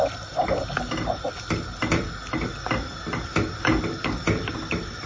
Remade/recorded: remade